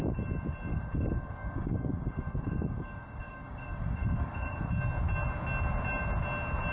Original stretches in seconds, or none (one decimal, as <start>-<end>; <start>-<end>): 0.0-0.7; 4.7-6.7